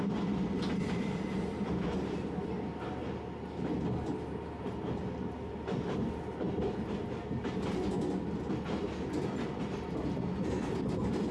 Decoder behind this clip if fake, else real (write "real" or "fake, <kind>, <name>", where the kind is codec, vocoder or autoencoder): real